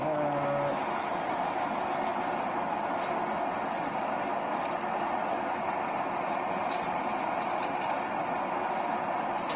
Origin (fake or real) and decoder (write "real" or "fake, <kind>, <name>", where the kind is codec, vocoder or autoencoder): real